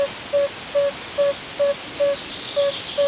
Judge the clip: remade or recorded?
recorded